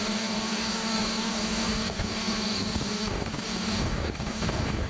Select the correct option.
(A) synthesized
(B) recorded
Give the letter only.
A